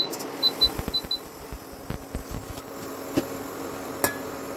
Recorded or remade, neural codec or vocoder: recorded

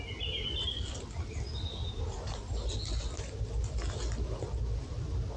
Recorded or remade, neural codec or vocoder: recorded